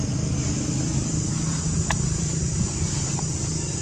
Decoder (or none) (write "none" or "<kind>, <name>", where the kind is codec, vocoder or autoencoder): none